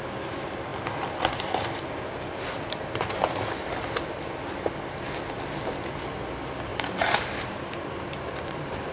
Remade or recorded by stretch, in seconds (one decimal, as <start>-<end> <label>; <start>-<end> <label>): 0.0-6.7 recorded; 6.7-8.9 remade